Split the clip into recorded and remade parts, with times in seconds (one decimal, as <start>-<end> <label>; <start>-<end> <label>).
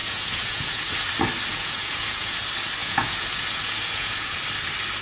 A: 0.0-0.9 remade; 0.9-1.5 recorded; 1.5-2.4 remade; 2.4-2.8 recorded; 2.8-4.4 remade; 4.4-5.0 recorded